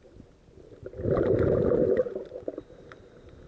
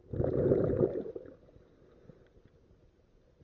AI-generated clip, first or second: second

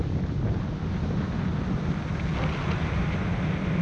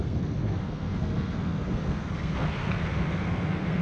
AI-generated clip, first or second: second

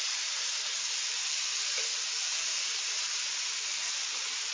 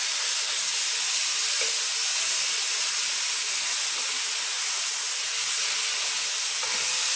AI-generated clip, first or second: first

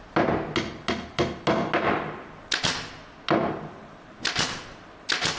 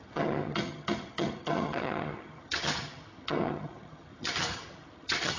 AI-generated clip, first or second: second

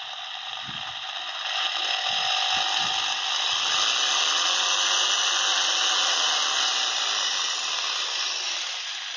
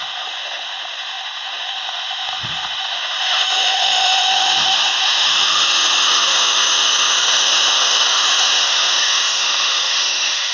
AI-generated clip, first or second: second